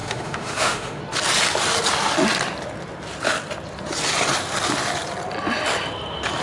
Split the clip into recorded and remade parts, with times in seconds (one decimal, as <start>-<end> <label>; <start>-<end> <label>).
0.0-1.0 remade; 1.0-6.4 recorded